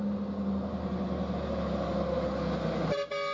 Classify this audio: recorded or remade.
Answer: recorded